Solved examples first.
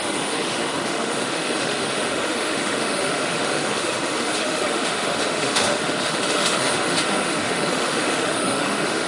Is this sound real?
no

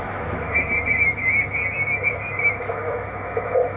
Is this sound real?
no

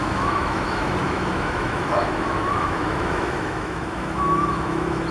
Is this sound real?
no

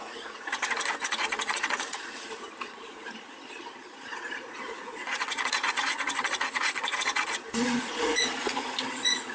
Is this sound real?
no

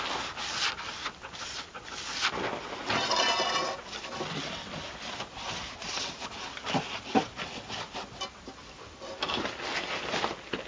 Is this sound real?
yes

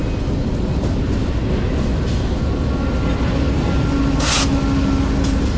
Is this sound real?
yes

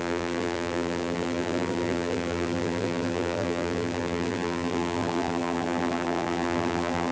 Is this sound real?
no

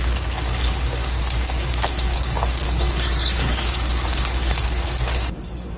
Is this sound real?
no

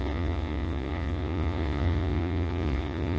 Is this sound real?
no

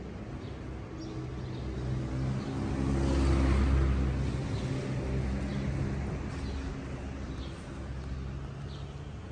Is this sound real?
yes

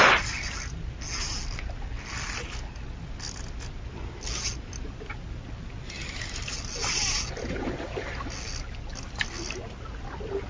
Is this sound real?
yes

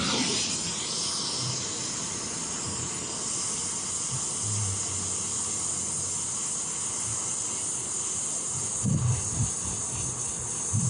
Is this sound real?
yes